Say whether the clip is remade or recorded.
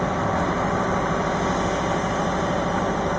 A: recorded